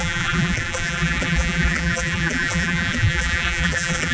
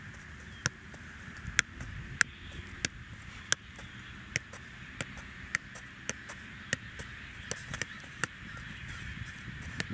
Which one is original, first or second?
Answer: second